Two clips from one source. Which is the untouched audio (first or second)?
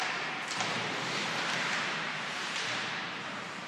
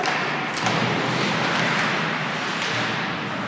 second